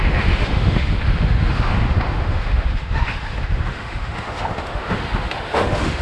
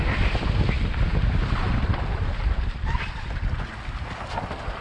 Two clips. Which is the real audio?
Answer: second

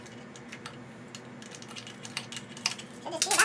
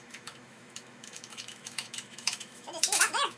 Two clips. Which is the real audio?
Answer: first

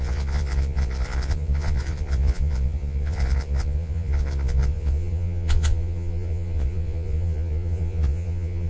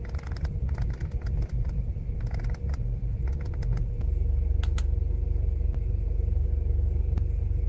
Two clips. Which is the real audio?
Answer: second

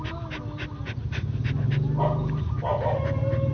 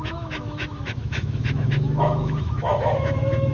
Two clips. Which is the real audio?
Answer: first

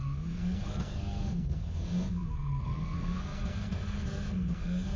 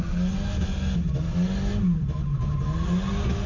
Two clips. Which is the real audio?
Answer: second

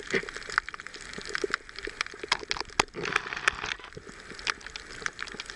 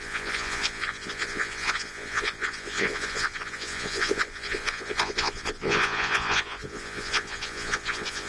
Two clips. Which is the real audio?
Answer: first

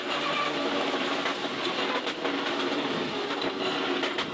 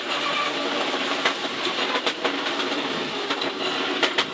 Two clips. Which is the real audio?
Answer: first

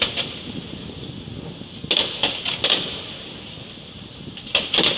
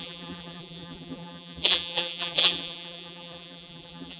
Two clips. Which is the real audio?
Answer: first